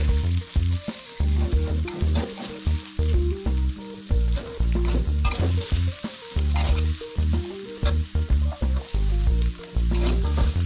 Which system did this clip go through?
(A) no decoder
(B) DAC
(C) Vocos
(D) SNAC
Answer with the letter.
A